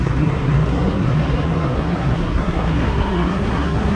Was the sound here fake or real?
fake